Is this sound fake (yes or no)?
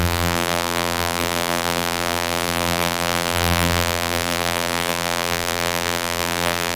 yes